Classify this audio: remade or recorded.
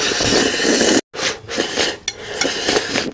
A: recorded